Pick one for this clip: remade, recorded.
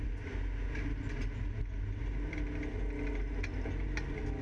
recorded